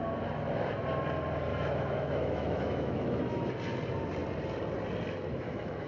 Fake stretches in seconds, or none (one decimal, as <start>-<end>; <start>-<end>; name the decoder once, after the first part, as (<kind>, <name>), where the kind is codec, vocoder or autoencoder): 1.5-3.5 (autoencoder, DAC-VAE); 5.3-5.9